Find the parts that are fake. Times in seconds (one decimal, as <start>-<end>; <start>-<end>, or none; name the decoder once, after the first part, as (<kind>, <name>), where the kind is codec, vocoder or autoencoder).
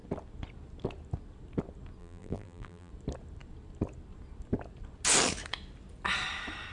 2.0-2.9 (vocoder, BigVGAN v2)